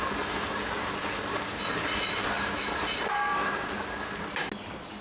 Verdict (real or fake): real